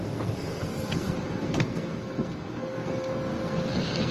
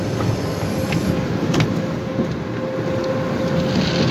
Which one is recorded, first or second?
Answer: second